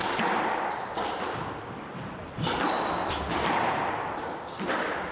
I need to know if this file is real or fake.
real